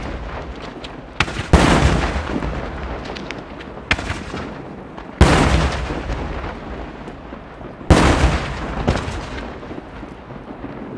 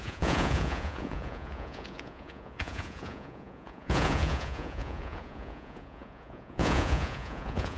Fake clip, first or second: second